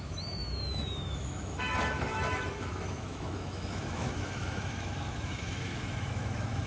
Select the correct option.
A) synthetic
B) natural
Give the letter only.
A